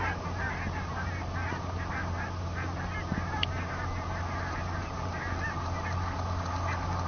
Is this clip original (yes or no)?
yes